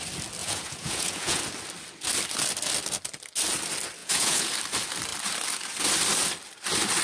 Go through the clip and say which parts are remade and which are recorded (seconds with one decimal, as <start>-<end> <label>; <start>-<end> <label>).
0.0-0.4 recorded; 0.4-1.4 remade; 1.4-4.0 recorded; 4.0-4.5 remade; 4.5-7.0 recorded

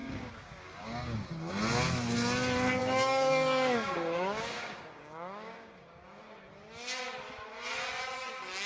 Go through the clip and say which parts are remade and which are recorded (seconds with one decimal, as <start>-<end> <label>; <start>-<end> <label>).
0.0-1.5 remade; 1.5-2.8 recorded; 2.8-6.2 remade; 6.2-8.7 recorded

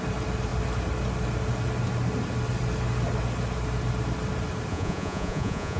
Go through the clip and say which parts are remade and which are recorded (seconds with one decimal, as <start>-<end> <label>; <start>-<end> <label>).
0.0-4.7 recorded; 4.7-5.8 remade